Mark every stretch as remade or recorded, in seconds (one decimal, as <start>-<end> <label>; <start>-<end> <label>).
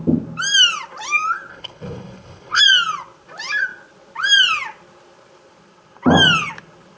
0.0-1.5 recorded; 1.5-2.6 remade; 2.6-7.0 recorded